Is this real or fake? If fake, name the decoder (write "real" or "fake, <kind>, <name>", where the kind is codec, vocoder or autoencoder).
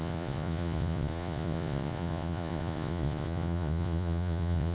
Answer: fake, vocoder, Vocos